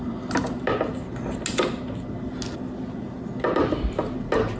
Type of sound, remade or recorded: recorded